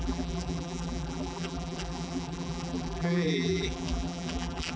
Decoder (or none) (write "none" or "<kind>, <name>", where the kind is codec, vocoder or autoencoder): vocoder, BigVGAN v2